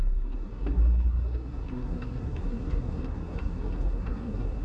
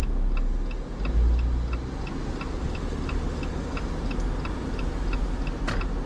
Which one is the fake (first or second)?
first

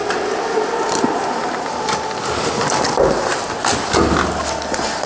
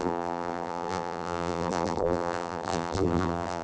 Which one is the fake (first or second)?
second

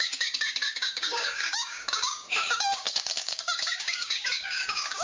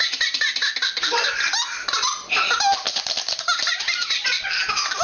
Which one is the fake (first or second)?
first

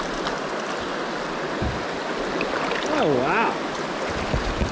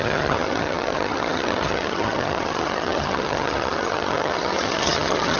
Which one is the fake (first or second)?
second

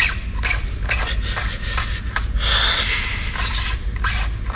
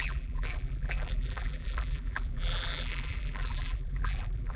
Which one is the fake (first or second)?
second